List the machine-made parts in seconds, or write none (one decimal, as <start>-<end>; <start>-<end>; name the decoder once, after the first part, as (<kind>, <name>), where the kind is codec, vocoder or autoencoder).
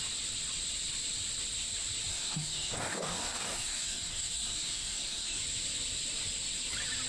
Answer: 2.1-5.4 (codec, DAC)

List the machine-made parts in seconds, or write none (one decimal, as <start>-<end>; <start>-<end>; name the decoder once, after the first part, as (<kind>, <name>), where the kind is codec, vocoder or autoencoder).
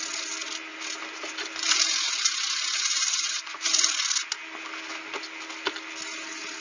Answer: 0.7-3.7 (vocoder, BigVGAN v2)